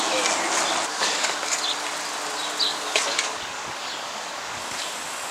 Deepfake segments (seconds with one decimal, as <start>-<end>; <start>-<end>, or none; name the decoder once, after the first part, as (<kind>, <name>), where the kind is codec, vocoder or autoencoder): 0.9-1.6 (codec, DAC); 2.7-4.6